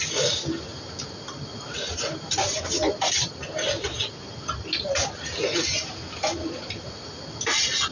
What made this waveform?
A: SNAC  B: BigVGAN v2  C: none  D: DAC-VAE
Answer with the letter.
C